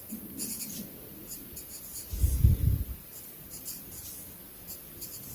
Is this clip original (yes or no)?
yes